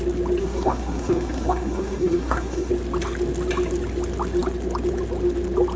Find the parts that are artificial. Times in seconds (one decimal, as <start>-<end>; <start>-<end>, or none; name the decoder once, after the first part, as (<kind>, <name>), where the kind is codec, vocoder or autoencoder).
0.4-2.7 (codec, SNAC)